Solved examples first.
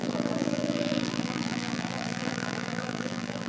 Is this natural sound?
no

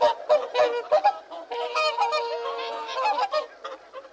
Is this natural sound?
yes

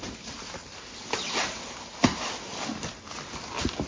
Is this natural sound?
yes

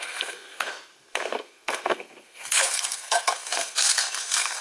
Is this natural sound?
no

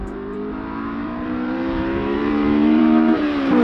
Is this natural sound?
no